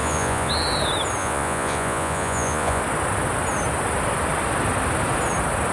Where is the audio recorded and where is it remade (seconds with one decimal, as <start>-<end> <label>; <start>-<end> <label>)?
0.0-0.5 remade; 0.5-1.2 recorded; 1.2-2.8 remade; 2.8-5.7 recorded